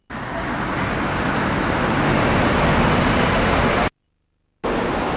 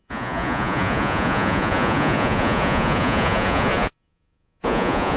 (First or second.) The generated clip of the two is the second